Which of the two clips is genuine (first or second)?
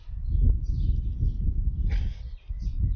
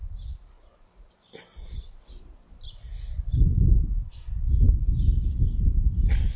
first